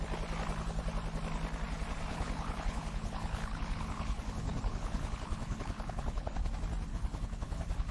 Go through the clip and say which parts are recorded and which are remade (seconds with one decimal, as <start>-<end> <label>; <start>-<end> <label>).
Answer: 0.0-2.1 recorded; 2.1-6.5 remade; 6.5-6.9 recorded; 6.9-7.9 remade